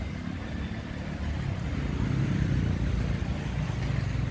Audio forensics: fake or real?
real